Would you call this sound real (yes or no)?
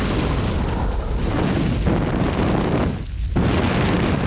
yes